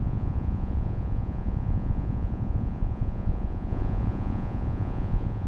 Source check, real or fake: fake